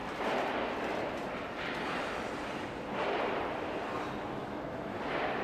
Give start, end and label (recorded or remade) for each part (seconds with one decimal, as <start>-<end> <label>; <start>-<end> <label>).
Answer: 0.0-4.4 recorded; 4.4-5.0 remade; 5.0-5.4 recorded